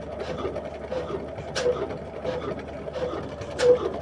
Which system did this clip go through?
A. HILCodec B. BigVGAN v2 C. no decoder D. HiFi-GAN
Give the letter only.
C